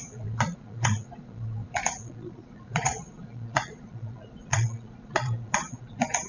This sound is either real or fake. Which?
fake